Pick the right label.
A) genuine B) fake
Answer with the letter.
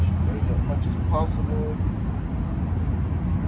A